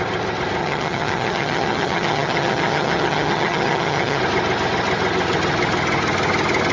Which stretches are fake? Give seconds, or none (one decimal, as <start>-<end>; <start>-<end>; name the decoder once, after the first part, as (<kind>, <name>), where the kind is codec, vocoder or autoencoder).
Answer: 0.6-4.2 (vocoder, HiFi-GAN)